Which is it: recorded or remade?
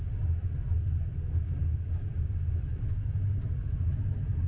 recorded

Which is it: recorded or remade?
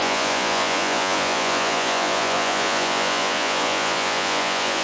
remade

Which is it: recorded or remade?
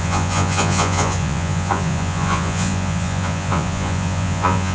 remade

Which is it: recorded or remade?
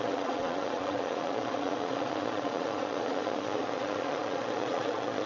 remade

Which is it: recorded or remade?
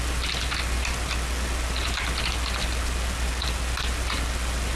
recorded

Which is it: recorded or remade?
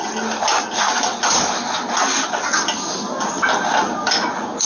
recorded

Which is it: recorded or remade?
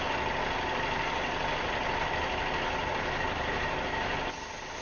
recorded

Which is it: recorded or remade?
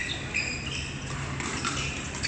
recorded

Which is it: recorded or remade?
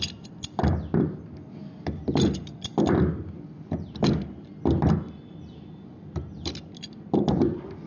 recorded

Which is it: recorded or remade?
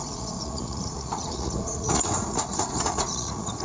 remade